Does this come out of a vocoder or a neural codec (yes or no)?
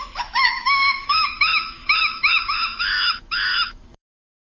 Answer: yes